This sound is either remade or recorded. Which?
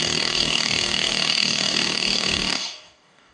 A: remade